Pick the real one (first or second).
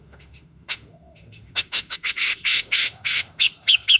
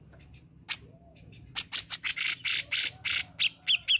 second